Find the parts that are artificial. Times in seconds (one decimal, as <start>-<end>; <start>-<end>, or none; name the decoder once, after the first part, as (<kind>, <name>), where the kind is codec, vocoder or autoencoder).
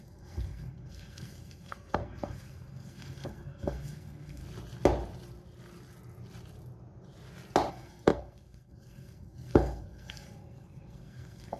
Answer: 0.0-4.4 (codec, SNAC); 7.7-11.6